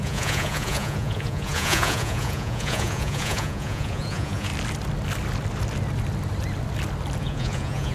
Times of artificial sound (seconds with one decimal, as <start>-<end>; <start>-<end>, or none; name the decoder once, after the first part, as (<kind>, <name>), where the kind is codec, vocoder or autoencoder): 0.0-4.5 (vocoder, Vocos); 7.2-7.9